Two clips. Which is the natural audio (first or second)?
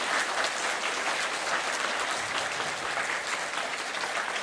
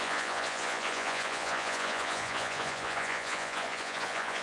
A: first